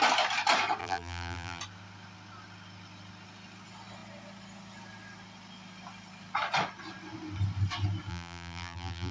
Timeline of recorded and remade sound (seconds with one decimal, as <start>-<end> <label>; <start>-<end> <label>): 0.0-0.8 recorded; 0.8-1.6 remade; 1.6-8.1 recorded; 8.1-9.1 remade